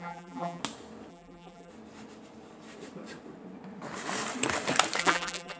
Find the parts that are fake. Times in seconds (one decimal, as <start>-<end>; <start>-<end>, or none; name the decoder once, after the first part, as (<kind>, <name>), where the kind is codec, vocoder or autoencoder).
0.0-0.6 (vocoder, BigVGAN v2); 1.1-1.7; 5.0-5.6